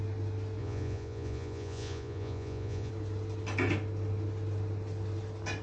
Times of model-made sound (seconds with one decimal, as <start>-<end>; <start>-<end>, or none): 0.6-2.9